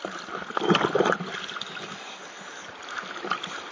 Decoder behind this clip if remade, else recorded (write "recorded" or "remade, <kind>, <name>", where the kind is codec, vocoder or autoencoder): recorded